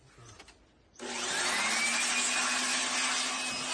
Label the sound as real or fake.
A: real